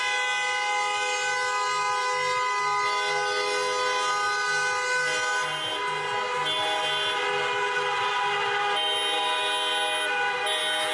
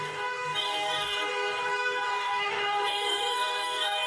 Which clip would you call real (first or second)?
first